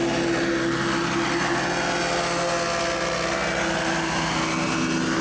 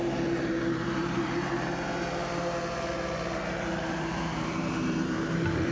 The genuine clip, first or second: first